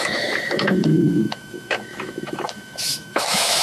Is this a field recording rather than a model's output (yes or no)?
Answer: no